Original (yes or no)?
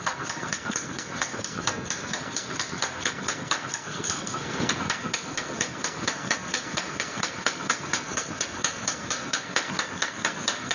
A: no